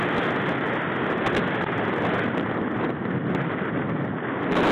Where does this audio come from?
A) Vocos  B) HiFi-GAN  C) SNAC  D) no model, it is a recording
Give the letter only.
D